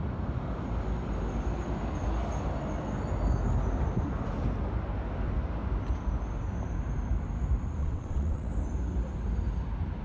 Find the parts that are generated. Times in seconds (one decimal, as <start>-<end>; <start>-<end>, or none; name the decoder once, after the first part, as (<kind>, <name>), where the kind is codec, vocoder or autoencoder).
7.8-8.5 (vocoder, WaveNeXt)

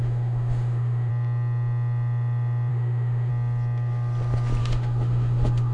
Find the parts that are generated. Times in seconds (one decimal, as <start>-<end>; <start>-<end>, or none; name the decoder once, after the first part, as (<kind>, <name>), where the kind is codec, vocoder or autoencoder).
0.0-1.1 (autoencoder, DAC-VAE); 2.7-3.3; 4.6-5.7

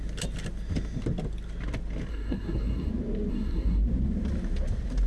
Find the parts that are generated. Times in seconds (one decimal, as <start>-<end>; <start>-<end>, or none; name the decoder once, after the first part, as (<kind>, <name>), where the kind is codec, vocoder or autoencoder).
2.1-2.9 (codec, SNAC); 3.3-3.8

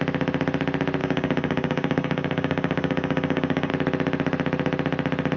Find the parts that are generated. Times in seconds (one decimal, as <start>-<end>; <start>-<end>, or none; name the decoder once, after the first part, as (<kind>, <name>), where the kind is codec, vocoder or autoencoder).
1.0-3.7 (codec, DAC)

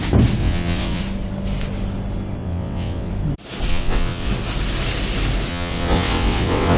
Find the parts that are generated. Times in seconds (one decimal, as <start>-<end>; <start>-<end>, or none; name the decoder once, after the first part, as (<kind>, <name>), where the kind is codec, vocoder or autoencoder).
0.4-1.0 (vocoder, WaveNeXt); 2.4-3.1; 3.7-4.3; 5.5-6.8

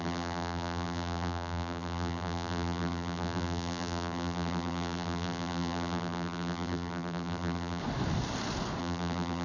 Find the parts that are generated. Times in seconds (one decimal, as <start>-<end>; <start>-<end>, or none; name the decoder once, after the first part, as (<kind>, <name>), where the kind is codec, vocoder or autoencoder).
0.0-7.8 (vocoder, BigVGAN v2); 8.8-9.4